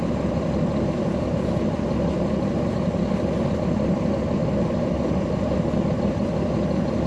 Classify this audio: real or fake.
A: real